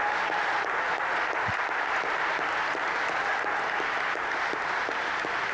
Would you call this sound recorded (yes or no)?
yes